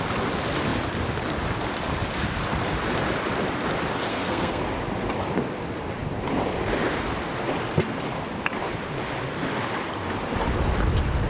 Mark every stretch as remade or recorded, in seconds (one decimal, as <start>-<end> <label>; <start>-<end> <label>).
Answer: 0.0-4.1 recorded; 4.1-4.6 remade; 4.6-11.3 recorded